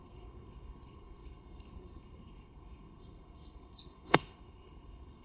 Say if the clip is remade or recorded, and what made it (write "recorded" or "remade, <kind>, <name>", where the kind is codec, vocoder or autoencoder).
remade, codec, SNAC